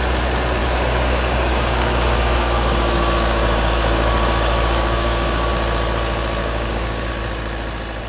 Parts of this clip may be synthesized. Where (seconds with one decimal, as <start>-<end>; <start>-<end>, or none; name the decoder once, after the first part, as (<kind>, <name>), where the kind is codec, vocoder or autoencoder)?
0.6-5.5 (codec, DAC); 6.4-7.1